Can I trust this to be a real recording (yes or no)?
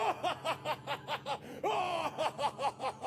no